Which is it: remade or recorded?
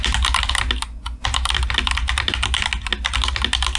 recorded